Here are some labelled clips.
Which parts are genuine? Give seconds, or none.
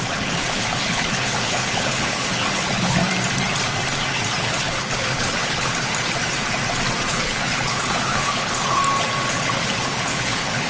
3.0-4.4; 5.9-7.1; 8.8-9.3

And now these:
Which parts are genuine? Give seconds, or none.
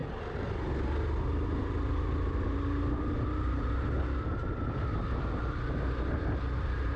0.0-7.0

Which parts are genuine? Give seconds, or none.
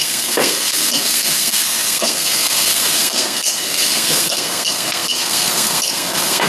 none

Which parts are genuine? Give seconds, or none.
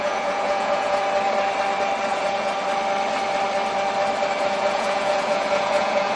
1.0-2.1; 2.5-4.4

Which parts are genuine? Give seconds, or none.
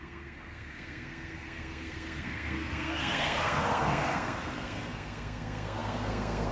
none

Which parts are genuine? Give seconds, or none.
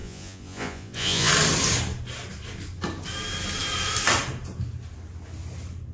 1.3-5.9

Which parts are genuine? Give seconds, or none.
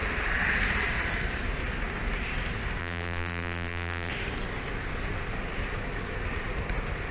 0.0-2.8; 4.1-7.1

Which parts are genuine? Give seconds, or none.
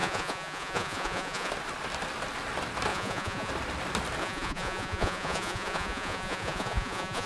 1.5-2.9; 3.5-4.2